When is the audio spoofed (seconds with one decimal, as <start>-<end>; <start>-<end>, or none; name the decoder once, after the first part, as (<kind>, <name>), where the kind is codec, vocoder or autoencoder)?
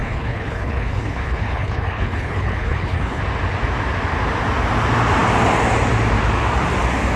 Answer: 0.0-3.2 (codec, HILCodec)